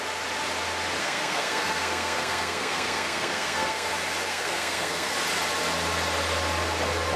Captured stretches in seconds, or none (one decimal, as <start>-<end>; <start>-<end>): 0.0-1.0; 3.9-4.3; 5.1-7.2